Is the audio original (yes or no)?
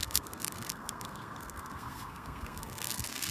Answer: no